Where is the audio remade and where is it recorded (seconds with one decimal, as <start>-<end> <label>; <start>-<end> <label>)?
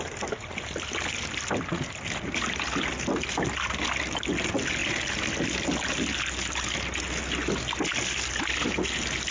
0.0-9.3 recorded